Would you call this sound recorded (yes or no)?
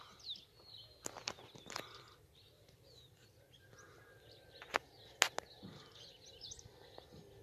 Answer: yes